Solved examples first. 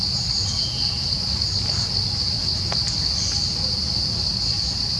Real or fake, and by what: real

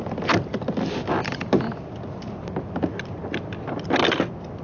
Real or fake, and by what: real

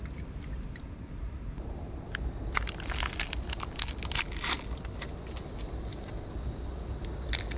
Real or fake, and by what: real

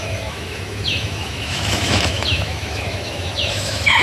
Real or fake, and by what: fake, autoencoder, DAC-VAE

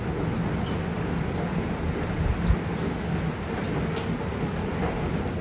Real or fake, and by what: real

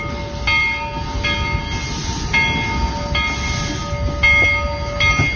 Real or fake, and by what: real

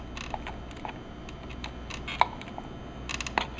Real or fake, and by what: real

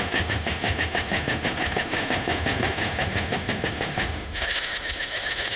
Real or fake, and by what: fake, autoencoder, DAC-VAE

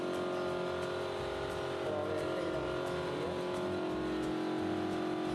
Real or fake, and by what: real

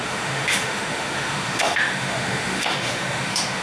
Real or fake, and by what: fake, autoencoder, DAC-VAE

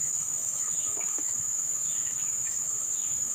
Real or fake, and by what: fake, autoencoder, DAC-VAE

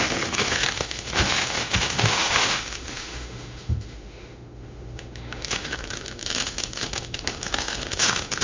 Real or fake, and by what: fake, autoencoder, DAC-VAE